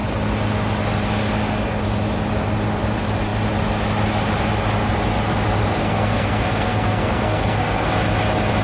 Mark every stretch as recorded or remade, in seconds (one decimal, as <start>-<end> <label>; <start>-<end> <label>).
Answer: 0.0-5.8 recorded; 5.8-7.9 remade; 7.9-8.6 recorded